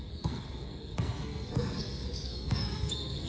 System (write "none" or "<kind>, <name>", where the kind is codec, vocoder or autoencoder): codec, SNAC